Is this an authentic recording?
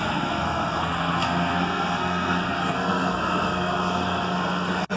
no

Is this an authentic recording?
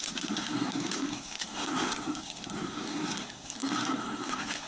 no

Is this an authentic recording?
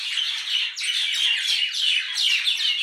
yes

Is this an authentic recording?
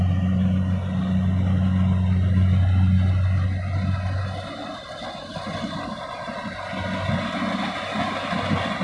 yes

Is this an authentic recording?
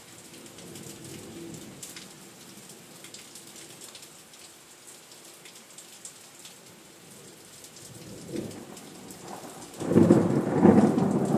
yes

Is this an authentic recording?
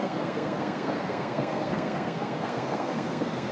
no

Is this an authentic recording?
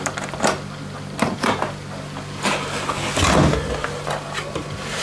yes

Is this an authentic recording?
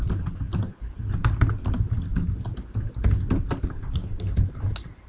yes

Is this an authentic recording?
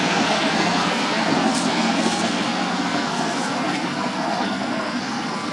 no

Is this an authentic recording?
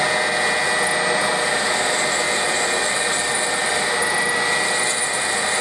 yes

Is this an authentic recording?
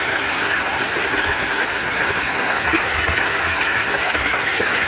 no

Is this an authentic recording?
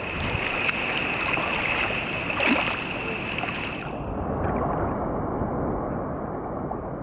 yes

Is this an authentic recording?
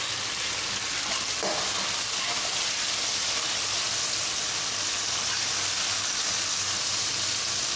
yes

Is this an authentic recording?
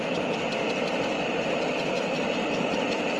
yes